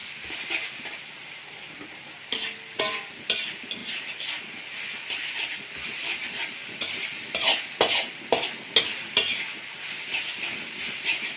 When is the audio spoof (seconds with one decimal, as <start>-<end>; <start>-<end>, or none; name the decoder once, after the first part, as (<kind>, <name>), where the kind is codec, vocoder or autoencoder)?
none